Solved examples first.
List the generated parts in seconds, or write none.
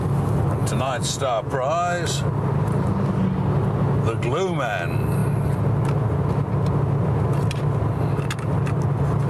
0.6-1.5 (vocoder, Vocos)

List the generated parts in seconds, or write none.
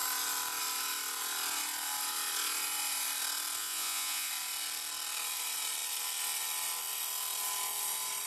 3.6-4.3 (vocoder, Vocos)